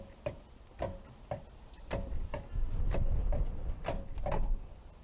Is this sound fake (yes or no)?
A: no